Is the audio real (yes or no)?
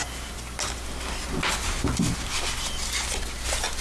yes